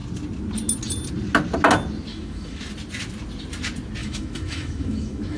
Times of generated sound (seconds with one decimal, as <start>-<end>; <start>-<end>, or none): 2.1-2.6; 4.0-5.4